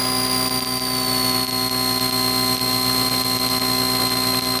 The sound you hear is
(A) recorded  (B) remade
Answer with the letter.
A